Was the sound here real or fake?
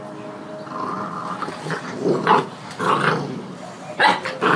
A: real